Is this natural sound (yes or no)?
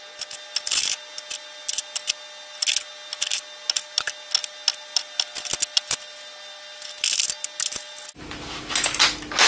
yes